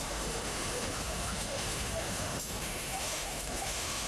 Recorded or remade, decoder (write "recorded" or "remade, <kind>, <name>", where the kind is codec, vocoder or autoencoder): remade, autoencoder, DAC-VAE